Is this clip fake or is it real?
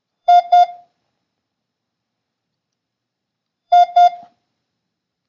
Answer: fake